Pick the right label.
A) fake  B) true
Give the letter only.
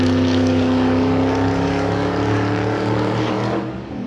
A